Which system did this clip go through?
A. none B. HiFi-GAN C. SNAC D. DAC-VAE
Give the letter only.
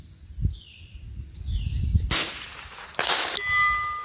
A